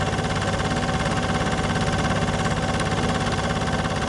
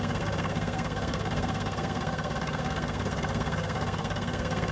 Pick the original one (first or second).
first